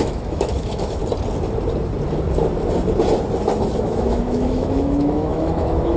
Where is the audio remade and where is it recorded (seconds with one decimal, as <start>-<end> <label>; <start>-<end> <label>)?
0.0-1.0 remade; 1.0-3.8 recorded; 3.8-6.0 remade